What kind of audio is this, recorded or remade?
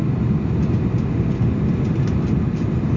recorded